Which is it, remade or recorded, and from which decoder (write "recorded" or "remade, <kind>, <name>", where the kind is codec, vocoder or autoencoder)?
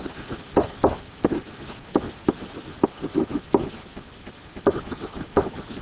recorded